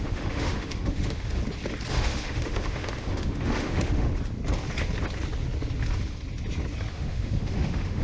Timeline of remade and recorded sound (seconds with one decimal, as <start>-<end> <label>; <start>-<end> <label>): 0.0-1.4 remade; 1.4-1.9 recorded; 1.9-4.1 remade; 4.1-6.9 recorded; 6.9-8.0 remade